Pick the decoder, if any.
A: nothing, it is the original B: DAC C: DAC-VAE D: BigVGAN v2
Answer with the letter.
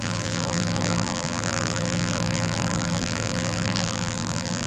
D